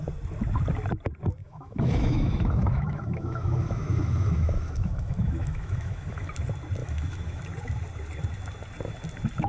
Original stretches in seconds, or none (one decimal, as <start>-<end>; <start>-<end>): 0.0-1.4; 6.3-6.8; 7.4-9.5